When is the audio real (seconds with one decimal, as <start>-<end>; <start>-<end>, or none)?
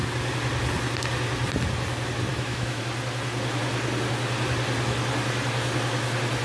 0.0-2.3; 2.8-6.4